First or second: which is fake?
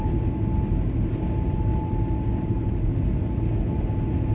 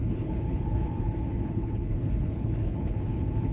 second